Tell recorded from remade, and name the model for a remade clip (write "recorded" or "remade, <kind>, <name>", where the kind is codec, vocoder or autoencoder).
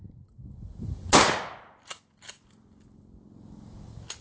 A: recorded